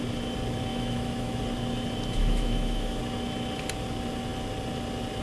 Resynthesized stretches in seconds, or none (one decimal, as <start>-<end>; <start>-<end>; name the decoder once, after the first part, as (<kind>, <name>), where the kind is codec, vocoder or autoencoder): 0.7-1.4 (autoencoder, DAC-VAE); 2.2-3.0